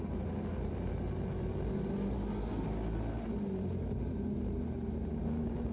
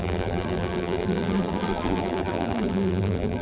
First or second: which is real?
first